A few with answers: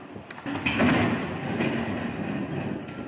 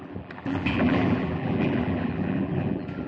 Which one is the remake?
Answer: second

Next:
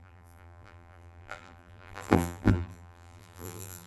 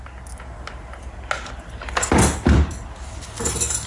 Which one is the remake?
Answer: first